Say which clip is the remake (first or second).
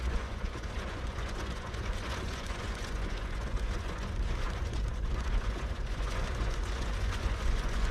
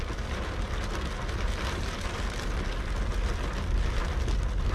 first